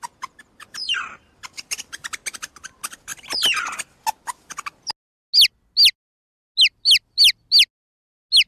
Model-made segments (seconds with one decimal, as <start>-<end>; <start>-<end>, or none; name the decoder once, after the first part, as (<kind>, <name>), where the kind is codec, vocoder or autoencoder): none